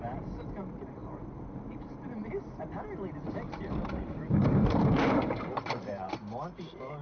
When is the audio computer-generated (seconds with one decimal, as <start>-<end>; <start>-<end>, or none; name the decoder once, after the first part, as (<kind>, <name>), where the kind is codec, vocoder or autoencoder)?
0.0-6.2 (vocoder, BigVGAN v2)